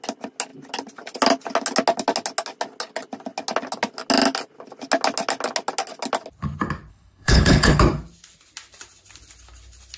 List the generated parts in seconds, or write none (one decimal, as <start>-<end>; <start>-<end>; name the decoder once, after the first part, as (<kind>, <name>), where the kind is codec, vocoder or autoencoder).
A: 6.9-7.8 (codec, HILCodec)